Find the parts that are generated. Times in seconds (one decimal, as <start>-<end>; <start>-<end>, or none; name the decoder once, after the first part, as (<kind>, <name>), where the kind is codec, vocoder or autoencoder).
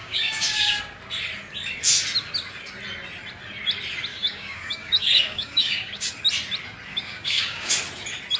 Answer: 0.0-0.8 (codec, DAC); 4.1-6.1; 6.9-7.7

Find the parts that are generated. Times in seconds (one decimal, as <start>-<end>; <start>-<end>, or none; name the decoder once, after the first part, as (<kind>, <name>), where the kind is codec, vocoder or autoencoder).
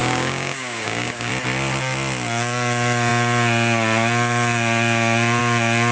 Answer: 0.0-1.3 (codec, DAC)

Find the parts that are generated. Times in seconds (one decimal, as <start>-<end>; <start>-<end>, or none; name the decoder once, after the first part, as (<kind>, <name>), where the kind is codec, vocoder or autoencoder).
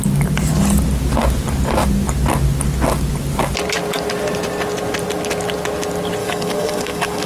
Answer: 6.2-7.3 (codec, DAC)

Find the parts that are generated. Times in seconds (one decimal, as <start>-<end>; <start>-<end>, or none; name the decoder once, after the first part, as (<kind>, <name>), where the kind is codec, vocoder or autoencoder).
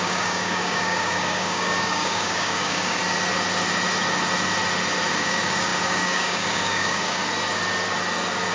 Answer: 0.0-3.0 (codec, DAC); 5.1-7.2